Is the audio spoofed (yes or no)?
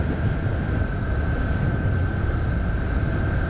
no